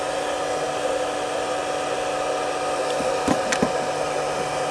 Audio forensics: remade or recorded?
recorded